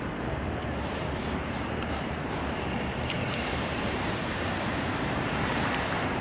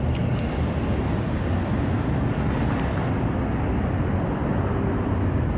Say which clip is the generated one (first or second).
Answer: first